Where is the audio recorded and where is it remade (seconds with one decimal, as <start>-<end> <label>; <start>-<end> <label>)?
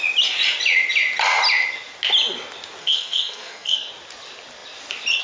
0.0-2.8 recorded; 2.8-3.9 remade; 3.9-5.2 recorded